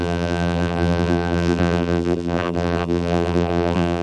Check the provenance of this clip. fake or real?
fake